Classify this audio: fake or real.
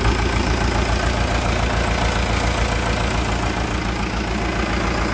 real